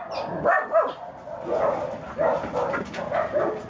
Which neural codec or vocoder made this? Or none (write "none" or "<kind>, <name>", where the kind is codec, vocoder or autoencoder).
none